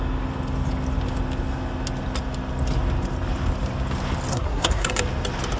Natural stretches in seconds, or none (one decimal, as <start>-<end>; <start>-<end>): 0.0-4.3; 5.0-5.6